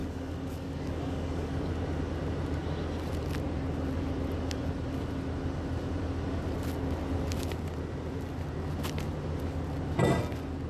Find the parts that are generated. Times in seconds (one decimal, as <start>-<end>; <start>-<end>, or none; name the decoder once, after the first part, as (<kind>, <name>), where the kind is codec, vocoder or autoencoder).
0.0-1.7 (codec, DAC)